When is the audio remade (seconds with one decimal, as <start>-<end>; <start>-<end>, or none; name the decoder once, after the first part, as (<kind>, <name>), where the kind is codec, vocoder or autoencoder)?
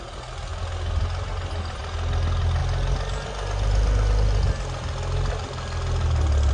none